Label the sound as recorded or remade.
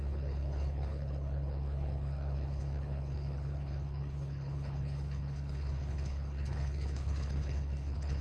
remade